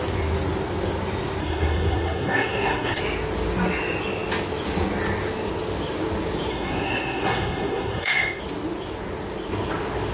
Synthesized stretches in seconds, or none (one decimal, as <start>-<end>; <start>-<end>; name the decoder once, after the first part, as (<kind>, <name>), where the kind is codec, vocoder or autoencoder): 1.4-3.0 (codec, SNAC); 6.5-8.4